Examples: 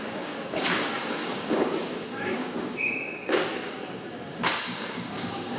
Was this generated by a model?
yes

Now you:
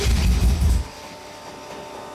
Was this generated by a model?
no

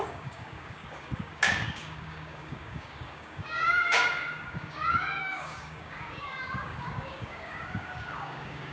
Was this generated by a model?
yes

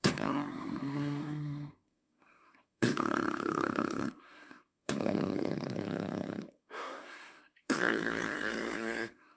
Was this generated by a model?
yes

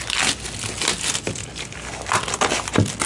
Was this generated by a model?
no